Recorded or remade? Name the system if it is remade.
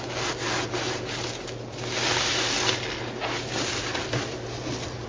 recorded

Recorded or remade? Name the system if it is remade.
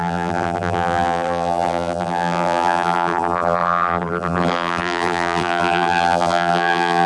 remade, vocoder, BigVGAN v2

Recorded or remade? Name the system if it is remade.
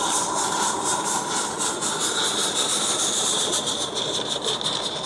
remade, vocoder, BigVGAN v2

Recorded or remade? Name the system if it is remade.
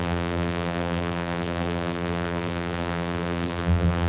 remade, vocoder, BigVGAN v2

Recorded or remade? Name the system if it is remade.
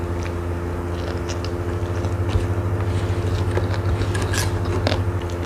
recorded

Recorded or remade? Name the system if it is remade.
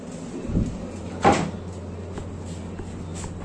recorded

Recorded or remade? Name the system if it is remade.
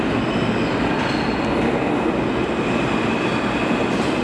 recorded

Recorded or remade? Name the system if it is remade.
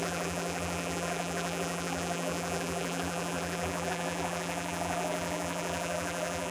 remade, vocoder, BigVGAN v2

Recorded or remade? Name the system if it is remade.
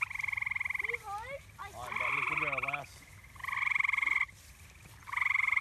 recorded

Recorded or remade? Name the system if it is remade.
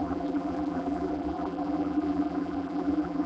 remade, vocoder, BigVGAN v2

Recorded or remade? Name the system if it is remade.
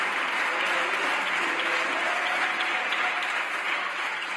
recorded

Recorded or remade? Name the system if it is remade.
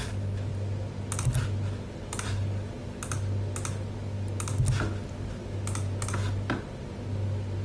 recorded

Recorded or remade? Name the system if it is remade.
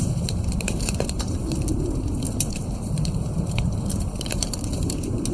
remade, vocoder, BigVGAN v2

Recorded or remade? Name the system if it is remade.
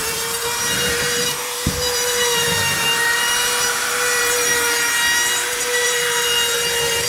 remade, vocoder, BigVGAN v2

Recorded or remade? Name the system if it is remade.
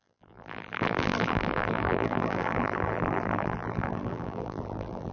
remade, vocoder, BigVGAN v2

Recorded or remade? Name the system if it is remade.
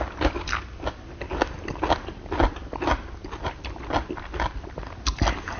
recorded